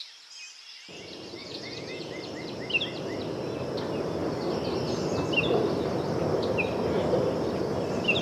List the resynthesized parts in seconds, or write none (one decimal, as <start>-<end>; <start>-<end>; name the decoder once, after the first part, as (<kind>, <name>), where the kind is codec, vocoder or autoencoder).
1.4-2.2 (vocoder, Vocos)